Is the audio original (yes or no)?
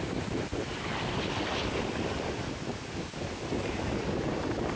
yes